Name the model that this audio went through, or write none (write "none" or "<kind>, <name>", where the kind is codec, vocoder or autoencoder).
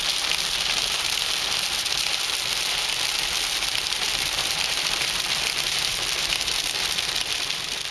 vocoder, BigVGAN v2